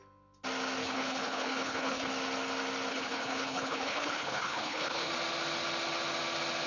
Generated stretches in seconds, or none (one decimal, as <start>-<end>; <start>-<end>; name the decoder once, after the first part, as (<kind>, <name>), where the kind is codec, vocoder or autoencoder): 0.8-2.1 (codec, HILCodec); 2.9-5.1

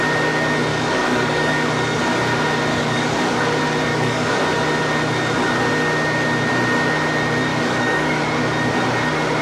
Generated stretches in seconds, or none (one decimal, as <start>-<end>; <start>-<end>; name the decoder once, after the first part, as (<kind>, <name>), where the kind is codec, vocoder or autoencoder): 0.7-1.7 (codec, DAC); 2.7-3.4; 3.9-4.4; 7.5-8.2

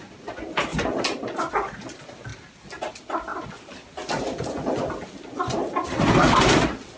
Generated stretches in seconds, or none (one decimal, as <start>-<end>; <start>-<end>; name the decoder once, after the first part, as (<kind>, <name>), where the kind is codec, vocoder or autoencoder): none

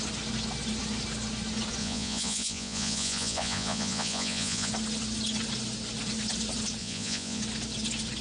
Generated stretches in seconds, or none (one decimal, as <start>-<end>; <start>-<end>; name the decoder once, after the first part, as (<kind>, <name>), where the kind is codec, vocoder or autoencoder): 1.8-4.7 (vocoder, Vocos); 6.8-7.4

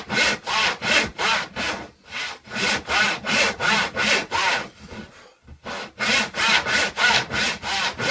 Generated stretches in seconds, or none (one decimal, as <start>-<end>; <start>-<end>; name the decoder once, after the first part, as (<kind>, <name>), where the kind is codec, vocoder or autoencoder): none

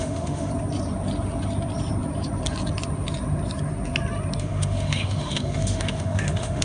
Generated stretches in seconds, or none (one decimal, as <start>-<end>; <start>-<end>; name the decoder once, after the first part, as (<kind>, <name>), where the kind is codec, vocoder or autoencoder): 0.0-0.5 (autoencoder, DAC-VAE); 4.4-6.6